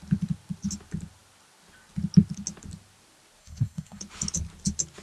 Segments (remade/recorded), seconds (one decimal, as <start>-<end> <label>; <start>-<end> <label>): 0.0-3.4 recorded; 3.4-4.0 remade; 4.0-5.0 recorded